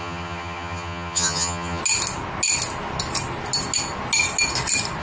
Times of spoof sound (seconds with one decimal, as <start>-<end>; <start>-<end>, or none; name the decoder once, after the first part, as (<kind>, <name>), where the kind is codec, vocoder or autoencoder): 0.0-1.8 (vocoder, HiFi-GAN)